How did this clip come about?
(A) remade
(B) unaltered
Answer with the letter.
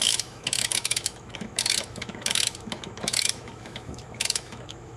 A